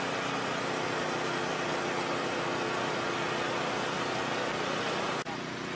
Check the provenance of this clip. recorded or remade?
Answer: recorded